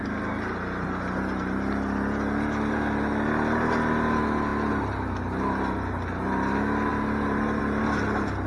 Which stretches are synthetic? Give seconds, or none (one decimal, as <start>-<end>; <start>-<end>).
none